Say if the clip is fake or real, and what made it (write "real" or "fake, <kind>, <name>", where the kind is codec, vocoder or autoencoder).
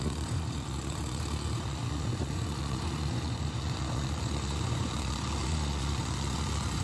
fake, vocoder, Vocos